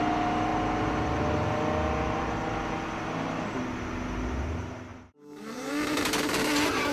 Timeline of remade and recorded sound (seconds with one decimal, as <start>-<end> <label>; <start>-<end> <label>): 0.0-4.9 recorded; 4.9-5.7 remade; 5.7-6.9 recorded